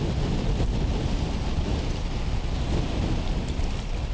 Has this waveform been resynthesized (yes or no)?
no